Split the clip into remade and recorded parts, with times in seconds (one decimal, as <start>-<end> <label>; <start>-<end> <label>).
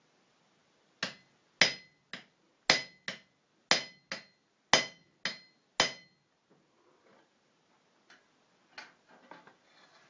0.0-10.1 recorded